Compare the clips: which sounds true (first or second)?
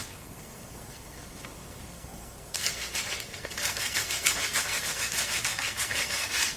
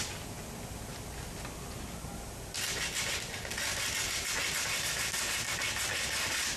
second